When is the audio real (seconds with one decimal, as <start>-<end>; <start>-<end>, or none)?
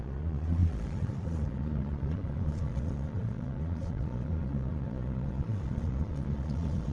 none